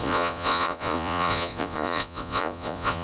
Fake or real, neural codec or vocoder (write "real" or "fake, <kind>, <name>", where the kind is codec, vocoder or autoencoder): fake, vocoder, Vocos